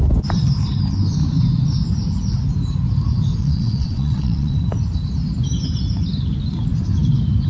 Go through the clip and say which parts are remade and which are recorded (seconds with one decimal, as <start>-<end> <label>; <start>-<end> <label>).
0.0-3.4 recorded; 3.4-4.6 remade; 4.6-7.5 recorded